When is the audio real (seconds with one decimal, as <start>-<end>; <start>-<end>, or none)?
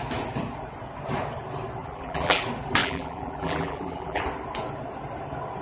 0.0-1.8; 2.4-2.8; 4.2-5.6